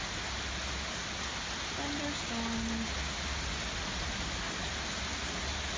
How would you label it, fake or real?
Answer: real